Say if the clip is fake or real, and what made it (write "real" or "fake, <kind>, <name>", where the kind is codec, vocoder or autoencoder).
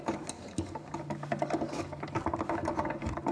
fake, codec, DAC